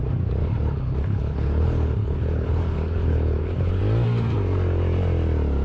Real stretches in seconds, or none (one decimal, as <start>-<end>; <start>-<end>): 0.0-0.4; 3.8-5.6

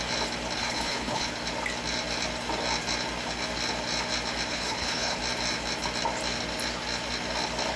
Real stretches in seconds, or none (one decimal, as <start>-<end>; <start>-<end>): 0.0-0.6; 1.3-4.5; 5.2-7.8

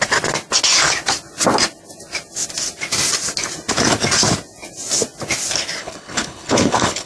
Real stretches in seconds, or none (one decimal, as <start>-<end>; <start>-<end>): 0.0-5.8

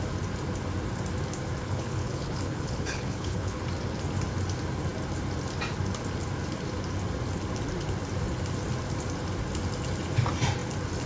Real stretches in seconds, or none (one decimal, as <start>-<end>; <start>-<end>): 0.0-1.6; 3.6-11.1